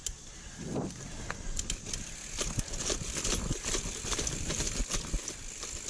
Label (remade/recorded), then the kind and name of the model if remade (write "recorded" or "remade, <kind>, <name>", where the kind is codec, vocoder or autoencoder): recorded